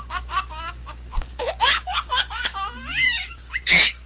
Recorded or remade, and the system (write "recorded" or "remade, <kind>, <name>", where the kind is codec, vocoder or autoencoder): remade, codec, DAC